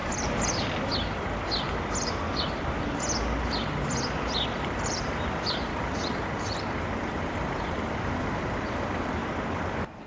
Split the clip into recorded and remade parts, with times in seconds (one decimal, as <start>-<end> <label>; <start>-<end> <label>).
0.0-5.0 recorded; 5.0-6.0 remade; 6.0-7.0 recorded; 7.0-9.2 remade; 9.2-10.1 recorded